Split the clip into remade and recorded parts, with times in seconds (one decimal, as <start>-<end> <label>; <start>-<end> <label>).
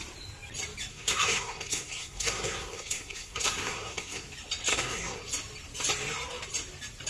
0.0-0.9 recorded; 0.9-4.3 remade; 4.3-4.7 recorded; 4.7-5.2 remade; 5.2-7.1 recorded